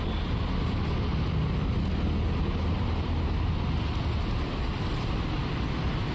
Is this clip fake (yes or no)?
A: no